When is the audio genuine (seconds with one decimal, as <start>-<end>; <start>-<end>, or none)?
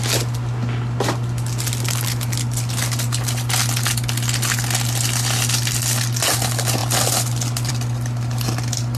0.0-9.0